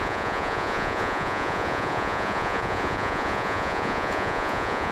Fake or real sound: fake